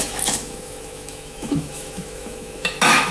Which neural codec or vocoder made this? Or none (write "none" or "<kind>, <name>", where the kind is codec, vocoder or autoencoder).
autoencoder, DAC-VAE